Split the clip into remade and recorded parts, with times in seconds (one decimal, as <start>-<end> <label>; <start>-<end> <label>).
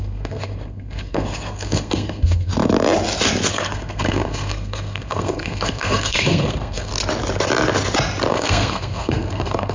0.0-2.5 remade; 2.5-3.5 recorded; 3.5-6.9 remade; 6.9-8.3 recorded; 8.3-9.7 remade